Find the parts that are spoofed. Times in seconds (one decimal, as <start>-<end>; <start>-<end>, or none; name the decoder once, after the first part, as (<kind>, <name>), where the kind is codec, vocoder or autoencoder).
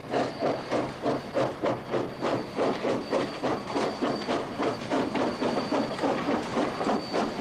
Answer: 2.3-5.4 (vocoder, BigVGAN v2); 6.5-7.0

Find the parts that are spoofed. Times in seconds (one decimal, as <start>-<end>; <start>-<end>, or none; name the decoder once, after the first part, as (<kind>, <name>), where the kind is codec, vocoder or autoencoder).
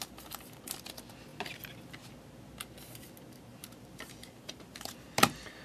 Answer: 3.5-5.1 (vocoder, BigVGAN v2)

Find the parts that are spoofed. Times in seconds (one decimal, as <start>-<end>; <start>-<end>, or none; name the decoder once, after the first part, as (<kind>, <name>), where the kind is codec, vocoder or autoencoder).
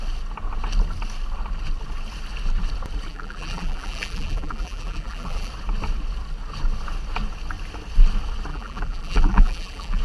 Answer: 3.1-5.5 (vocoder, BigVGAN v2); 8.5-10.0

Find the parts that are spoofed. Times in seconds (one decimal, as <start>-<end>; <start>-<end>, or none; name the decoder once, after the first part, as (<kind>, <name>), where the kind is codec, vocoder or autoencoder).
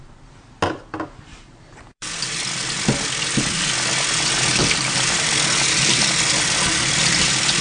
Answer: 1.3-2.1 (vocoder, BigVGAN v2); 4.6-5.3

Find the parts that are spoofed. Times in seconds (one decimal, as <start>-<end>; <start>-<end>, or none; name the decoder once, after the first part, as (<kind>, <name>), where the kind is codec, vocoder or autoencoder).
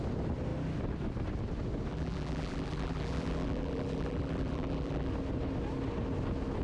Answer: 1.9-5.1 (vocoder, BigVGAN v2)